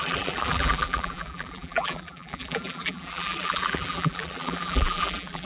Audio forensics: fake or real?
fake